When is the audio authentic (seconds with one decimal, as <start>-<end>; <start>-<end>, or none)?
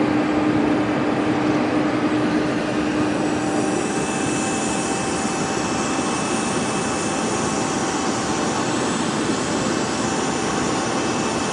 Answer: 0.0-7.8; 8.7-11.5